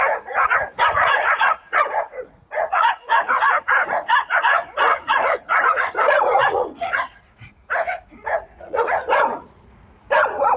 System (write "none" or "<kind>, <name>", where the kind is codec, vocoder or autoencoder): vocoder, Vocos